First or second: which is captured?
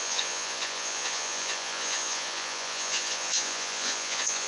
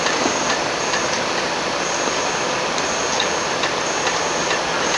second